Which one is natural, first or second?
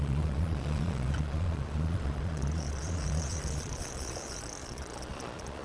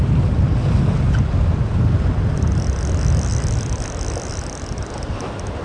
second